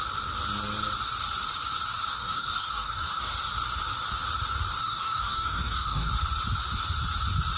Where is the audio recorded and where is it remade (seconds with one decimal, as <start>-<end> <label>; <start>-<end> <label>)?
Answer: 0.0-2.1 recorded; 2.1-3.2 remade; 3.2-4.8 recorded; 4.8-6.1 remade; 6.1-7.6 recorded